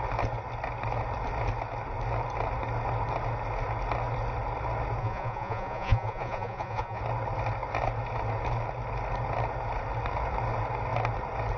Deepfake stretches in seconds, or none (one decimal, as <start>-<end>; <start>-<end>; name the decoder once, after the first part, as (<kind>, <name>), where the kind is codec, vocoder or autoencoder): 5.0-7.0 (vocoder, Vocos)